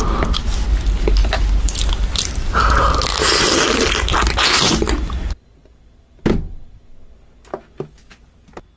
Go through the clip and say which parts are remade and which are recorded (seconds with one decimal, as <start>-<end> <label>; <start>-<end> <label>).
0.0-1.2 recorded; 1.2-2.5 remade; 2.5-8.8 recorded